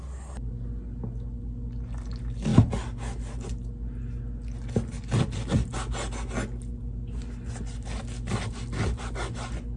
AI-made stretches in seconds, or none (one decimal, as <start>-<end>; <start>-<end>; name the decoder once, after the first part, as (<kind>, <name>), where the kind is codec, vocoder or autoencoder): none